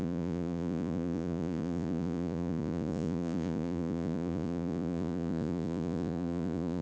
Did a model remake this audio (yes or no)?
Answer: yes